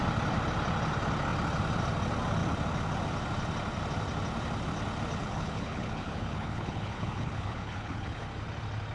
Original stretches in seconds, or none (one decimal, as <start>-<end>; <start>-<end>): 0.0-5.2; 8.2-8.9